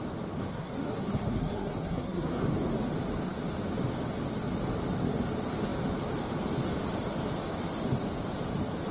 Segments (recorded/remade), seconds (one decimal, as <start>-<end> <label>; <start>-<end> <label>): 0.0-0.5 recorded; 0.5-2.4 remade; 2.4-8.9 recorded